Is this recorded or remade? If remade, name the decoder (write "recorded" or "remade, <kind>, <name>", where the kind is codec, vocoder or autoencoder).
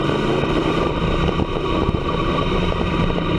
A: remade, vocoder, BigVGAN v2